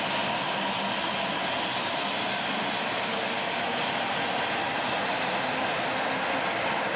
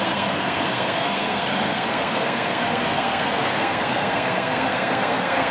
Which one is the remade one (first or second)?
second